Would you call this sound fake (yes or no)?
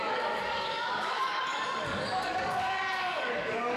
yes